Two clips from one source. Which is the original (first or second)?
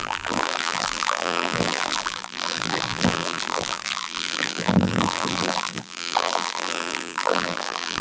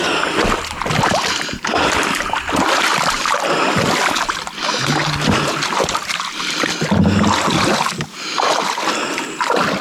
second